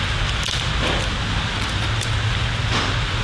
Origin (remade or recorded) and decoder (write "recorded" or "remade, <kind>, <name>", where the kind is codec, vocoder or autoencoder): recorded